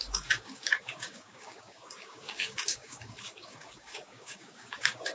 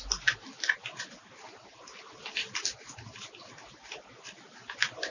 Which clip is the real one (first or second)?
second